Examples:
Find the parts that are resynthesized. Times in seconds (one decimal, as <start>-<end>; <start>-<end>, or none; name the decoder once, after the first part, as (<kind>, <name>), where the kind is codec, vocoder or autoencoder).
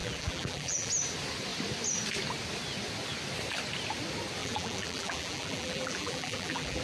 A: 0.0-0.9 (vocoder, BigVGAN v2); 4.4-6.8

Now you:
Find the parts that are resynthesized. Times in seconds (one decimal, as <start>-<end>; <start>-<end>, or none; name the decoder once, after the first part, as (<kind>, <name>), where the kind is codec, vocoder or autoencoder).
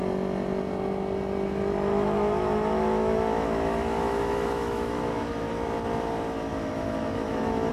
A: 1.9-5.5 (autoencoder, DAC-VAE); 6.5-7.7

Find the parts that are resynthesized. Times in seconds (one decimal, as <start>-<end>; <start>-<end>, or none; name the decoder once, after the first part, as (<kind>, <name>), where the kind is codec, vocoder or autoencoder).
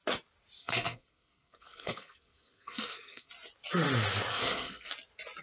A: 0.6-3.3 (codec, SNAC); 4.3-4.9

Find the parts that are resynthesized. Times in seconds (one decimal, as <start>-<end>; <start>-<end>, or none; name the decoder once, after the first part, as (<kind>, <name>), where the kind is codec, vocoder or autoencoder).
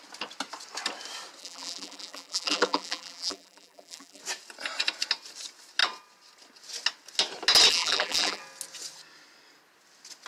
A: 1.4-4.2 (vocoder, BigVGAN v2); 7.7-8.4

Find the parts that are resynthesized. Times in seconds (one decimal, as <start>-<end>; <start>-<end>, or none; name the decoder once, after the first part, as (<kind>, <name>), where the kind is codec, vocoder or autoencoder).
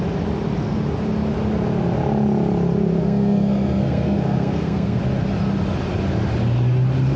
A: 3.0-5.0 (codec, SNAC)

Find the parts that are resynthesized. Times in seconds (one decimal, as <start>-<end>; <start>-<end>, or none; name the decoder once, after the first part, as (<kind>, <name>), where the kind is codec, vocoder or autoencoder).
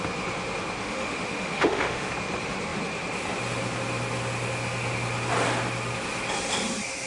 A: 0.8-2.1 (autoencoder, DAC-VAE)